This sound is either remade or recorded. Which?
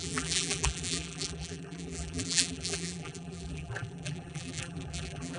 remade